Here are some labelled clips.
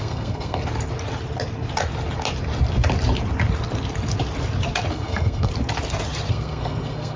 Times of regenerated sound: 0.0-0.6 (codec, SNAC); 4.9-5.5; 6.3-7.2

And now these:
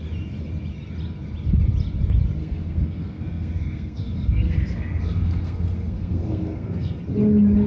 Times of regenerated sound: 2.4-7.0 (codec, SNAC)

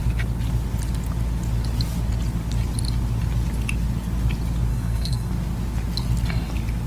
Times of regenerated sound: 4.7-5.3 (codec, SNAC)

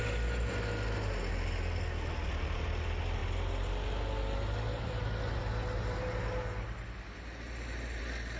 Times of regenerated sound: none

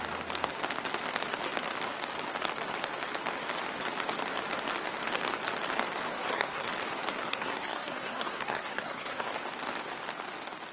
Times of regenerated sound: 6.1-6.7 (codec, SNAC); 7.3-9.3

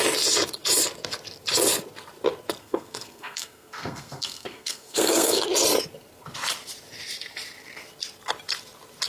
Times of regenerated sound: 2.6-5.4 (codec, SNAC)

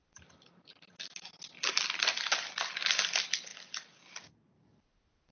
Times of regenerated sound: none

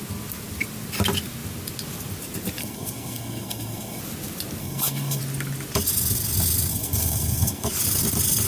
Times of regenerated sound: 2.6-4.0 (codec, SNAC); 4.6-5.2; 6.7-7.7